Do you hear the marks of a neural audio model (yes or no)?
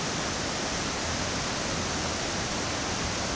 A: no